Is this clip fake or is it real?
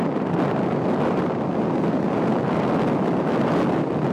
real